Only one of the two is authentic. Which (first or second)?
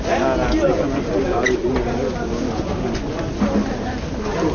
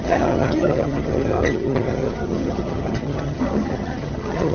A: first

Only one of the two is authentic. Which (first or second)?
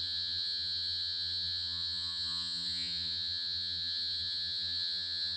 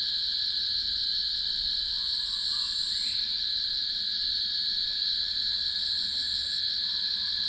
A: second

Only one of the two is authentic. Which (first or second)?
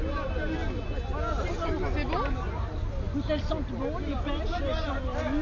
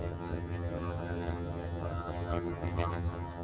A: first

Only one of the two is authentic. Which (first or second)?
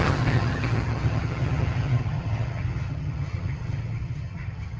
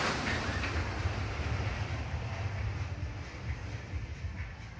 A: second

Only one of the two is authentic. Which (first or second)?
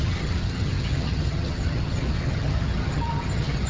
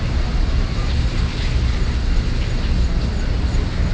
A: second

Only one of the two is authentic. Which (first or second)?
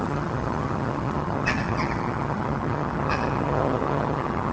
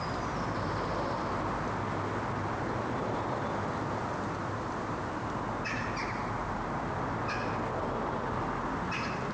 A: second